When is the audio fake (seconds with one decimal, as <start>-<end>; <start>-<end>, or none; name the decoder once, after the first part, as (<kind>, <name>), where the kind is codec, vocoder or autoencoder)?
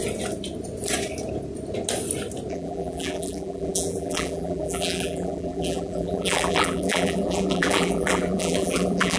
2.5-9.2 (vocoder, BigVGAN v2)